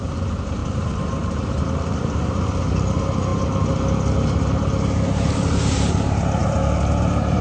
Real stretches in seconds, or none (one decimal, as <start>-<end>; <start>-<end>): 3.3-4.6; 6.4-7.0